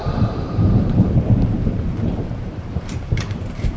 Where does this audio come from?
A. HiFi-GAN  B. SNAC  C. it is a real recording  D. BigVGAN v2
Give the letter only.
D